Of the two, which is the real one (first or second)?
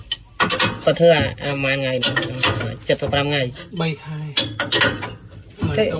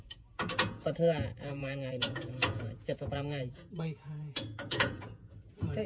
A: first